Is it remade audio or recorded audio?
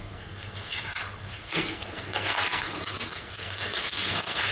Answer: remade